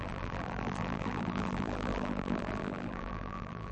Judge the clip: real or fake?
fake